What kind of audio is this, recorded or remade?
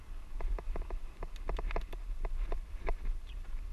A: recorded